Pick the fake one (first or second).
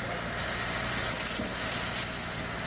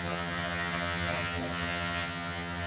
second